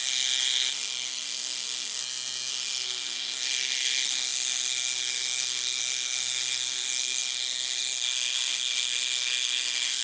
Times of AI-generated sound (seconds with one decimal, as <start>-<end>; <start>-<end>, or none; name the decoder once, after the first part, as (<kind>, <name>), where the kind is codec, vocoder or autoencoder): 0.0-2.0 (codec, SNAC); 2.5-10.0